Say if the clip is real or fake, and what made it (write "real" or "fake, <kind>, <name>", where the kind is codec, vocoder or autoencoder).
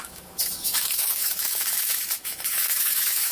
fake, autoencoder, DAC-VAE